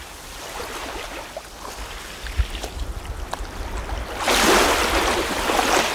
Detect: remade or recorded recorded